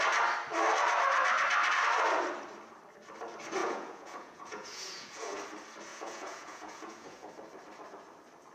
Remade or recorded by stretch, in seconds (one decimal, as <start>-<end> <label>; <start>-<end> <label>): 0.0-3.6 recorded; 3.6-5.4 remade; 5.4-5.9 recorded; 5.9-7.3 remade; 7.3-8.5 recorded